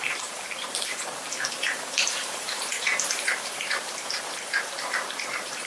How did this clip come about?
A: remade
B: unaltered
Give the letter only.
A